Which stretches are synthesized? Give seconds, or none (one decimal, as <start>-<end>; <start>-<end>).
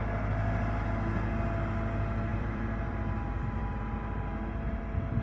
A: 2.3-3.0